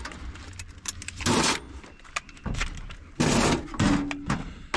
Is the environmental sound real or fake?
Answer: real